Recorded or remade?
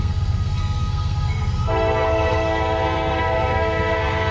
remade